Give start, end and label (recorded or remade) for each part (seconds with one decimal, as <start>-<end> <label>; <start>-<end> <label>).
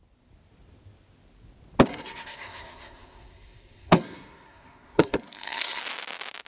0.0-1.9 recorded; 1.9-5.8 remade; 5.8-6.5 recorded